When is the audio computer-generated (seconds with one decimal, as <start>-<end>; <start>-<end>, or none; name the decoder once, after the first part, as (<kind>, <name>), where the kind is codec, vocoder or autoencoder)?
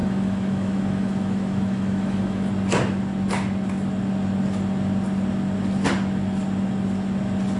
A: 0.0-2.5 (autoencoder, DAC-VAE)